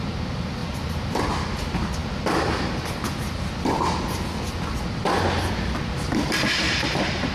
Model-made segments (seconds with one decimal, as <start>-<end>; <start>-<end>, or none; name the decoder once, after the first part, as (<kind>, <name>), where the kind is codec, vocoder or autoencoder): 0.6-1.3 (vocoder, BigVGAN v2)